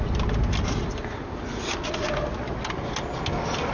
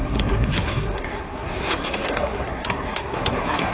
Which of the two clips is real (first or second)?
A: first